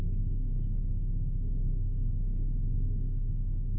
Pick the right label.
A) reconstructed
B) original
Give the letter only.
A